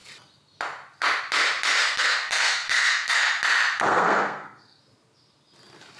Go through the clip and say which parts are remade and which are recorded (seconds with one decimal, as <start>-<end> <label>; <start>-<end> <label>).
0.0-1.8 recorded; 1.8-3.2 remade; 3.2-3.9 recorded; 3.9-4.8 remade; 4.8-6.0 recorded